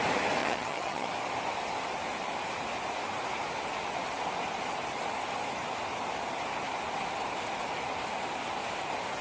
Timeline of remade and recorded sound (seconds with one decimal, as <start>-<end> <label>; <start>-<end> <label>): 0.0-0.4 recorded; 0.4-1.1 remade; 1.1-9.2 recorded